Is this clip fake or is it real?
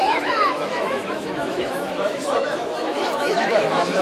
fake